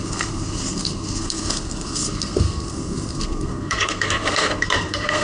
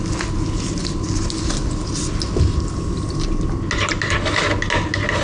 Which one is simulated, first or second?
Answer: first